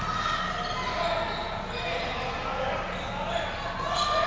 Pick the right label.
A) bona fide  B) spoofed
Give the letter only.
A